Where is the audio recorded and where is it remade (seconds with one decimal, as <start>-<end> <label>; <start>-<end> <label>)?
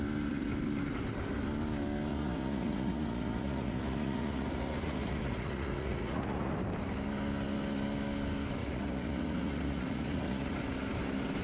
0.0-2.1 recorded; 2.1-6.5 remade; 6.5-8.6 recorded; 8.6-10.6 remade; 10.6-11.4 recorded